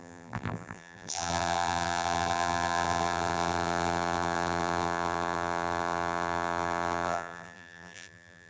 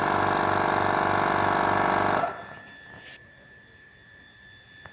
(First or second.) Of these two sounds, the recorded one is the second